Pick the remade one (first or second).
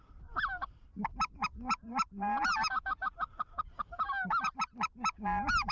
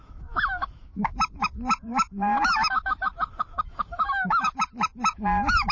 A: second